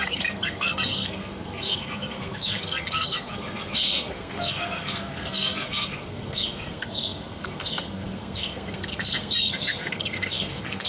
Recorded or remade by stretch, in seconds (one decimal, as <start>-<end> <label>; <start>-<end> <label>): 0.0-10.9 remade